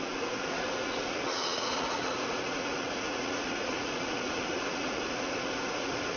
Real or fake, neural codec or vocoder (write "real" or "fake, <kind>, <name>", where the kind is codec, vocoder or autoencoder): fake, vocoder, Vocos